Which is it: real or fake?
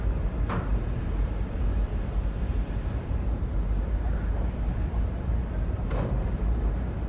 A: fake